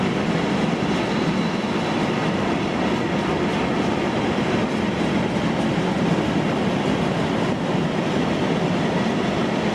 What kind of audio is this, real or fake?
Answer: real